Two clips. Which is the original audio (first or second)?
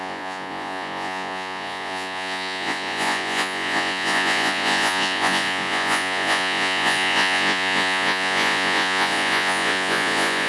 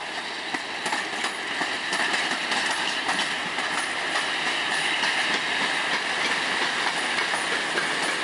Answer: second